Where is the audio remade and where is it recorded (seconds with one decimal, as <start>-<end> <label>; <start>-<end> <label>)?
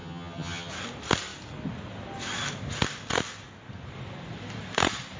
0.0-0.7 remade; 0.7-5.2 recorded